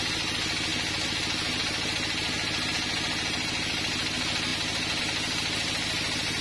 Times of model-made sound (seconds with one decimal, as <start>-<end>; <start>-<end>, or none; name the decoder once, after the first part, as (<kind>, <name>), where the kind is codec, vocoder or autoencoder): none